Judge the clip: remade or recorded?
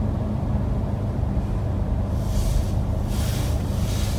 recorded